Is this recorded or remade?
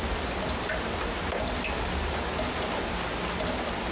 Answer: recorded